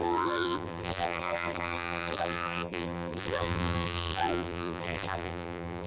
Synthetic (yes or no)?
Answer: yes